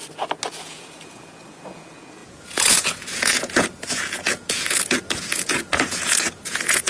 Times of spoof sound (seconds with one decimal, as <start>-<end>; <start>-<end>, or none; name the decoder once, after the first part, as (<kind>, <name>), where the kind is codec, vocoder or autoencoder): 0.5-6.9 (vocoder, Vocos)